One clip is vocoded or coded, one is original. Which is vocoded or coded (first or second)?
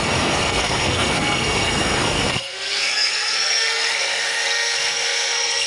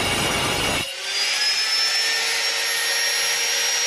first